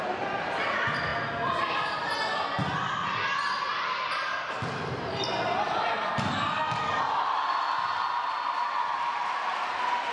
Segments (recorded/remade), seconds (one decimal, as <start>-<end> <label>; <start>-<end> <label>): 0.0-10.1 recorded